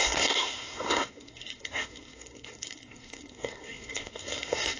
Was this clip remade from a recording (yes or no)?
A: yes